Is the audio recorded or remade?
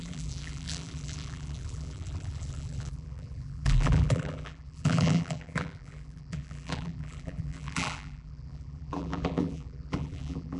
remade